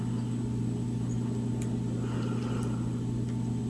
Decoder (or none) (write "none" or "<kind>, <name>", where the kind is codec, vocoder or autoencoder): none